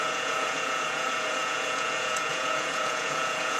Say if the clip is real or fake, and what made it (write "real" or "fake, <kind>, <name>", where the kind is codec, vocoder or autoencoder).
fake, vocoder, Vocos